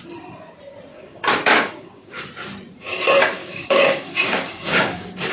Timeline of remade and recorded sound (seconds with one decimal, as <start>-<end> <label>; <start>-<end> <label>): 0.0-0.9 recorded; 0.9-2.2 remade; 2.2-3.4 recorded; 3.4-5.3 remade